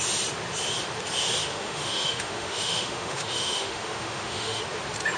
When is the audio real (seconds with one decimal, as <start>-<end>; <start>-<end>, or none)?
0.0-1.5; 4.6-5.2